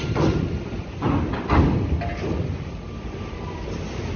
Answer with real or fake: real